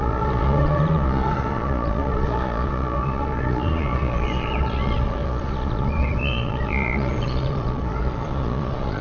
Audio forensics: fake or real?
fake